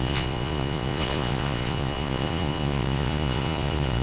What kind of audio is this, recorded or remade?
remade